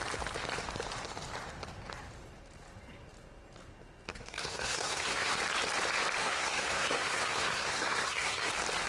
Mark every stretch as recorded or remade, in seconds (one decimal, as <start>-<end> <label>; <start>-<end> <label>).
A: 0.0-4.1 recorded; 4.1-5.3 remade; 5.3-6.2 recorded; 6.2-8.5 remade; 8.5-8.9 recorded